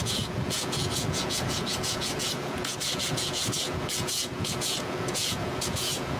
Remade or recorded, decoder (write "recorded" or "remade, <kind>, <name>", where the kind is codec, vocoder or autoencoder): remade, vocoder, Vocos